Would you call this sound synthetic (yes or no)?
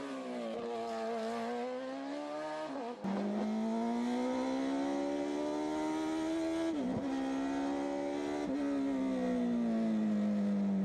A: no